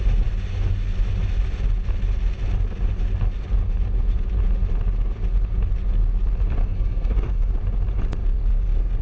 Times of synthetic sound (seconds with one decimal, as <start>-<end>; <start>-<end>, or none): 6.6-7.5